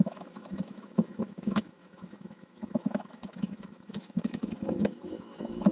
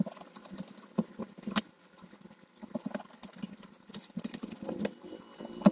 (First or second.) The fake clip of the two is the first